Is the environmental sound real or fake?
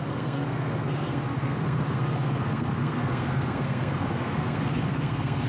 fake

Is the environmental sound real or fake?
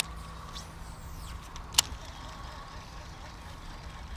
real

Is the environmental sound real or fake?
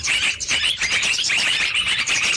fake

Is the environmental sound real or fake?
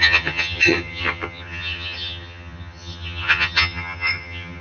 fake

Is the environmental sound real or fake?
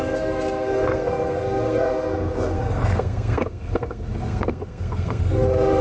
fake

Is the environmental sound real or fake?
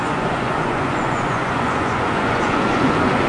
fake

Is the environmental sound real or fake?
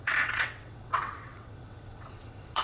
fake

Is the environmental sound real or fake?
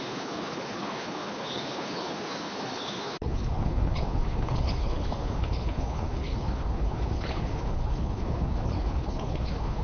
fake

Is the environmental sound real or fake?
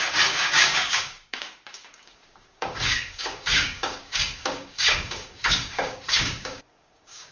fake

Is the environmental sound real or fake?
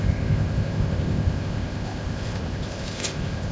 fake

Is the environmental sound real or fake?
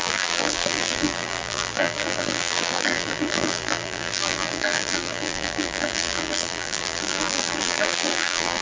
fake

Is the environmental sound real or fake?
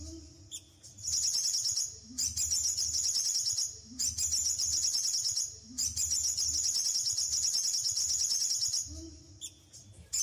real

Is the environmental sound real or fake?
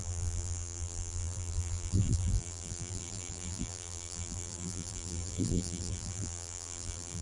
fake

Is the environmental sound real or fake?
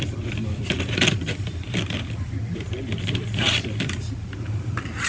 fake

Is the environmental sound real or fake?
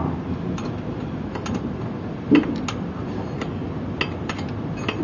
real